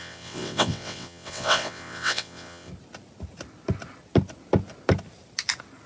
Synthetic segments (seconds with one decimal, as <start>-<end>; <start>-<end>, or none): 0.0-2.7